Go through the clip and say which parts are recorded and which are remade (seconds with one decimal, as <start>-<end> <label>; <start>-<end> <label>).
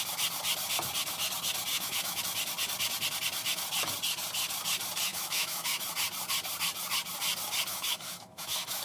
0.0-1.7 recorded; 1.7-2.2 remade; 2.2-5.1 recorded; 5.1-5.8 remade; 5.8-7.7 recorded; 7.7-8.8 remade